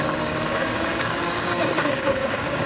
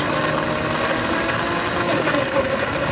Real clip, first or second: second